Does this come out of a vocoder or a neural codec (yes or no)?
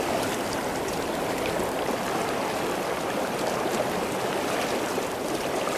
no